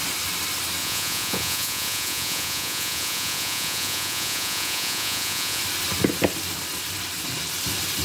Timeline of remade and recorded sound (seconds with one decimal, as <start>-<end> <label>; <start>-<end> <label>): 0.0-0.8 recorded; 0.8-5.6 remade; 5.6-8.0 recorded